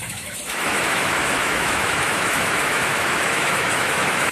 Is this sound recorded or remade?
remade